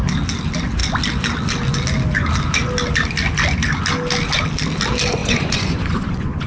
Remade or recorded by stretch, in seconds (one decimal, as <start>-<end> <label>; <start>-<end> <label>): 0.0-5.2 recorded; 5.2-6.5 remade